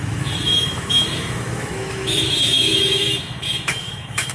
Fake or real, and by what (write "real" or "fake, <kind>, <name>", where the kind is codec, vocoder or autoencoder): fake, autoencoder, DAC-VAE